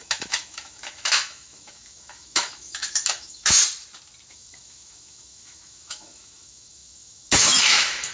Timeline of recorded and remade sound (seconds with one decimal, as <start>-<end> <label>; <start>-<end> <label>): 0.0-3.6 remade; 3.6-4.3 recorded; 4.3-8.1 remade